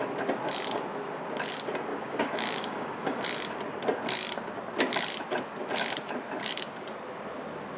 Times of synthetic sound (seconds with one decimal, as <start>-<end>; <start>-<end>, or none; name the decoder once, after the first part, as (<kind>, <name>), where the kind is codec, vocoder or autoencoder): 1.9-3.2 (codec, DAC)